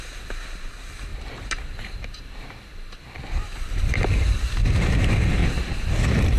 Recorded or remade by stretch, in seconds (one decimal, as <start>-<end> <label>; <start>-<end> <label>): 0.0-1.1 recorded; 1.1-4.9 remade; 4.9-5.4 recorded; 5.4-6.4 remade